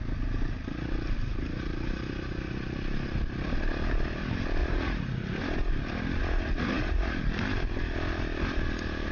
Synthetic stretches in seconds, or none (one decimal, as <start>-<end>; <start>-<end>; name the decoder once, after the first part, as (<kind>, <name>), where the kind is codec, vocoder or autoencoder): 4.6-5.4 (vocoder, Vocos); 6.2-7.2